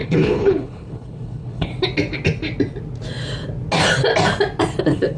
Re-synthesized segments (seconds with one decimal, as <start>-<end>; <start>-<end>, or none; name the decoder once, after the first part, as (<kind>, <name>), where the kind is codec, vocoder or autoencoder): 0.0-1.7 (codec, HILCodec); 4.8-5.2

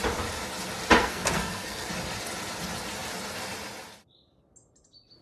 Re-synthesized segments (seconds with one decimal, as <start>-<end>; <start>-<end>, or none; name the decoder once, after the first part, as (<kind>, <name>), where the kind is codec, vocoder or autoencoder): 1.0-1.9 (codec, SNAC)

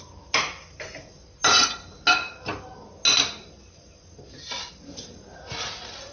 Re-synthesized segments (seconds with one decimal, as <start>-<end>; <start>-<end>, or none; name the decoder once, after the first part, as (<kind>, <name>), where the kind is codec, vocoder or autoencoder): none

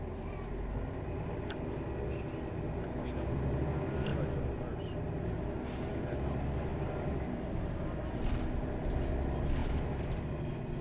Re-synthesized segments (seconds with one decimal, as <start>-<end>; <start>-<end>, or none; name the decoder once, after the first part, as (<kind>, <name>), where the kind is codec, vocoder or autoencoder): 6.7-9.0 (vocoder, BigVGAN v2); 9.6-10.2